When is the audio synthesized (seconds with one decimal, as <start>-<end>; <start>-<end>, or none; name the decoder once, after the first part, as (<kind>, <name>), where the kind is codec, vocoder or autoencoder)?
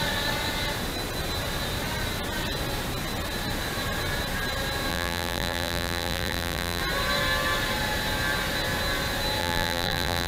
4.9-6.8 (vocoder, BigVGAN v2); 9.4-10.3